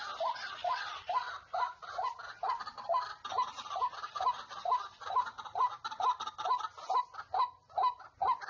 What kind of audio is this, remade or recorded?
recorded